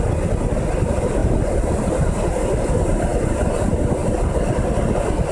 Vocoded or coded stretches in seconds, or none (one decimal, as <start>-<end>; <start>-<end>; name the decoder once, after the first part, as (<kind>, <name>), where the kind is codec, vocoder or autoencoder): none